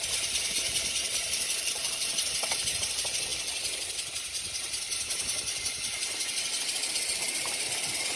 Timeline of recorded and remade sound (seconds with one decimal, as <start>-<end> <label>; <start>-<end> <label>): 0.0-3.3 remade; 3.3-6.9 recorded; 6.9-8.2 remade